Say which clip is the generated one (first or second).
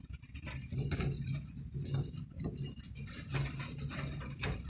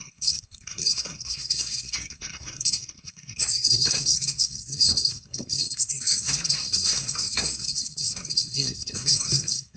second